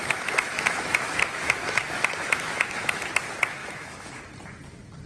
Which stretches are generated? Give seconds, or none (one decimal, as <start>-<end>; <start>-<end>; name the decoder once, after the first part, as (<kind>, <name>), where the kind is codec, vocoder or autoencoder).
0.0-3.1 (autoencoder, DAC-VAE); 3.6-4.2